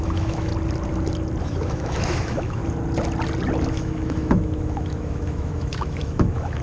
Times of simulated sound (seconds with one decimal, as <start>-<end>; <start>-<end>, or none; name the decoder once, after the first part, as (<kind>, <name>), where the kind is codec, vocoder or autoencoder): 0.0-0.5 (autoencoder, DAC-VAE); 1.4-2.6; 3.7-6.6